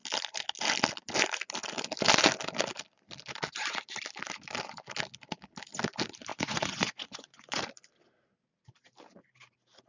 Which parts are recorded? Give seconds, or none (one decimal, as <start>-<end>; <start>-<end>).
0.0-6.3; 7.6-9.9